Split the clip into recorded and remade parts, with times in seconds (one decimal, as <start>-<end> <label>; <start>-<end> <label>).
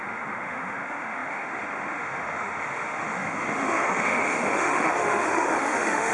0.0-6.1 remade